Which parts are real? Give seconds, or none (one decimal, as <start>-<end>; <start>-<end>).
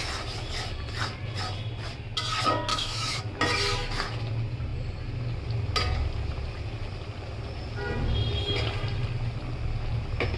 0.0-2.7; 3.2-10.4